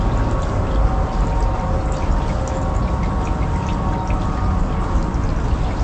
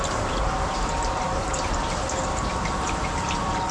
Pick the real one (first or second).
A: first